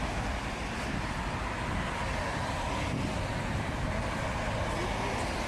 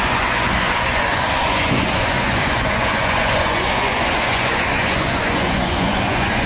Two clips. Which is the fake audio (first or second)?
second